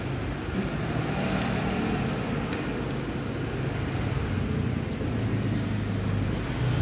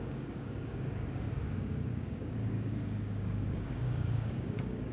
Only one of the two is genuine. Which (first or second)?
first